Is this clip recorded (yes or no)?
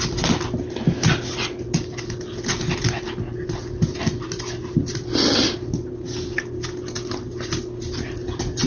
yes